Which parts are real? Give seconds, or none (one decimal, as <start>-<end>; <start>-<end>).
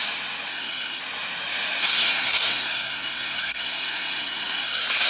0.0-0.5; 1.0-1.8